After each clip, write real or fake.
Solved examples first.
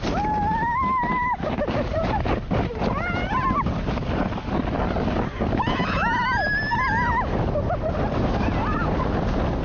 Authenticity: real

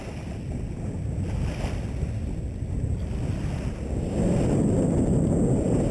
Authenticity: real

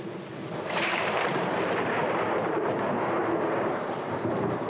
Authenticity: fake